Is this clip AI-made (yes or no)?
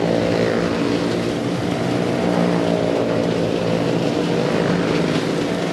no